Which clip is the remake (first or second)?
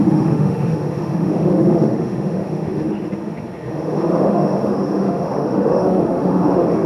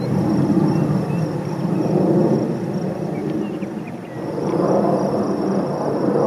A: first